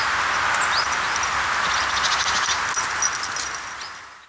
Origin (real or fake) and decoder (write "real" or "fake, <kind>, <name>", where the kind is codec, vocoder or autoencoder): real